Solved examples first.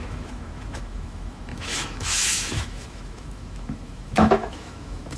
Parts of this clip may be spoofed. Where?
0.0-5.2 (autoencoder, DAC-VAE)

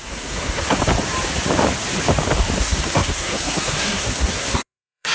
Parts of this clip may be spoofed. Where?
0.0-0.8 (codec, SNAC); 2.6-5.1

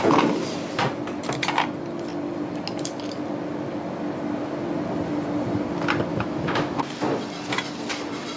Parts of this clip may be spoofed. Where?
6.1-6.8 (autoencoder, DAC-VAE)